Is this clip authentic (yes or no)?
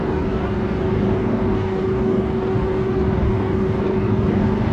no